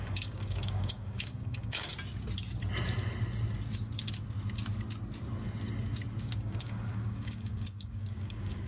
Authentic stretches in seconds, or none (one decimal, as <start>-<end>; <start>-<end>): 1.9-6.2